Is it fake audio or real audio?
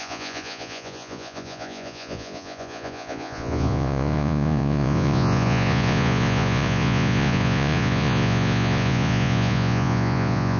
fake